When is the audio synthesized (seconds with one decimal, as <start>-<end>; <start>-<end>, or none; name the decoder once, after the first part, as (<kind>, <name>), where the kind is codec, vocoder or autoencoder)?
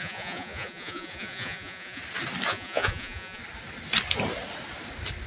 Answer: 0.0-2.0 (vocoder, Vocos); 2.5-3.4